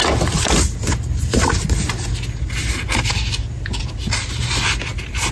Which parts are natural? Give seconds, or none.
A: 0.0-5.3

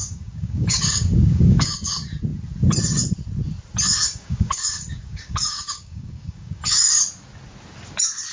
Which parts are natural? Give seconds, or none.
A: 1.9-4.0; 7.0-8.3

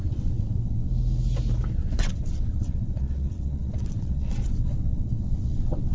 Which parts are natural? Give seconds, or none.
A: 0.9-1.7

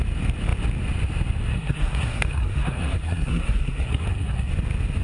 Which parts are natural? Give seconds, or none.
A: 0.0-1.5; 4.5-5.0

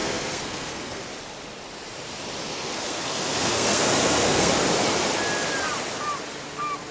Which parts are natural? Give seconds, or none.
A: 1.0-2.5; 4.5-6.9

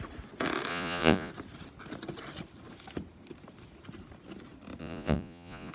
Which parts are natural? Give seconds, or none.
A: 0.0-0.7; 1.3-4.8

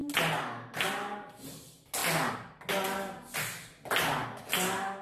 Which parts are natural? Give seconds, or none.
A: 0.0-5.0